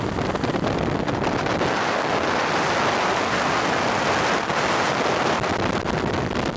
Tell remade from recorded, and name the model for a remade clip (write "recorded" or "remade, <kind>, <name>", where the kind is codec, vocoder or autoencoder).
recorded